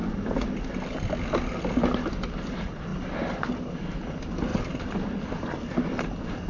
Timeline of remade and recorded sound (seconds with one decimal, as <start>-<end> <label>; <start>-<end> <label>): 0.0-2.9 recorded; 2.9-3.5 remade; 3.5-4.5 recorded; 4.5-6.0 remade; 6.0-6.5 recorded